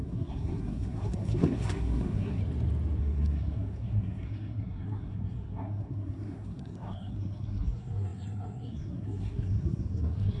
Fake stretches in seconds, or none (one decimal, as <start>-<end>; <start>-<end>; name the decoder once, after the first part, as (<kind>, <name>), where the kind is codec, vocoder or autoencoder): 0.0-2.4 (codec, SNAC); 3.0-10.4

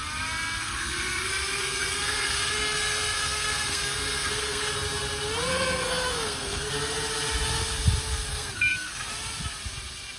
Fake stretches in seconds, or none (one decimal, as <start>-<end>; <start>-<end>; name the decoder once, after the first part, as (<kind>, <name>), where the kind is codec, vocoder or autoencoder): 0.6-4.7 (codec, SNAC); 5.5-6.7; 8.3-9.1

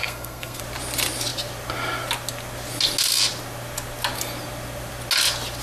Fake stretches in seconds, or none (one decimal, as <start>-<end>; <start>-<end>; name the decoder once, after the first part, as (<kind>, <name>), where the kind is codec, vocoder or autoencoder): 0.0-0.6 (codec, SNAC)

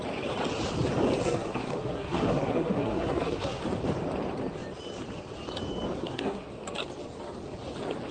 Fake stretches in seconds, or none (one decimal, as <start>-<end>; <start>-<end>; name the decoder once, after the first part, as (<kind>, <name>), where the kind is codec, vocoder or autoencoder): 1.2-3.6 (codec, SNAC); 6.0-6.5

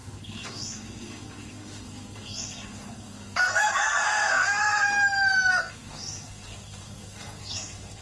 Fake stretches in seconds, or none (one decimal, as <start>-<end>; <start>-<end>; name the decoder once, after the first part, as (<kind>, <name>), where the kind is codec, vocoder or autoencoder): 0.0-4.6 (codec, SNAC); 5.6-8.0

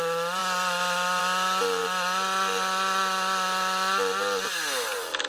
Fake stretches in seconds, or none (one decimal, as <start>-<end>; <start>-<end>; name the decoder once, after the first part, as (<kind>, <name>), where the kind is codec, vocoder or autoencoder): none